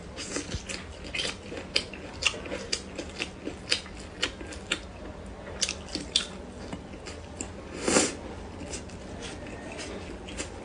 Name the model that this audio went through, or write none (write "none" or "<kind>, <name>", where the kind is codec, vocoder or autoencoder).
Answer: none